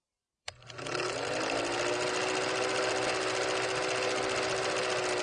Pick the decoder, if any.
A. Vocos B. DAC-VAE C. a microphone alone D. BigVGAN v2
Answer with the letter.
C